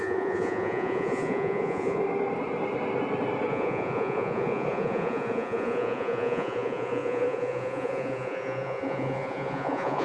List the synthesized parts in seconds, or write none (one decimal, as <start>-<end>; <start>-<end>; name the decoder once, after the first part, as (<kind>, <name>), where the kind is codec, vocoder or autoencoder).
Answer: 0.0-2.0 (vocoder, Vocos); 3.5-10.0